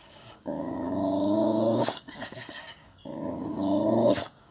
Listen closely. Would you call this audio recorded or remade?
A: remade